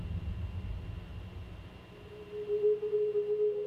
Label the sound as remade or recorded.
recorded